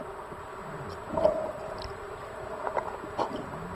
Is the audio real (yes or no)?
yes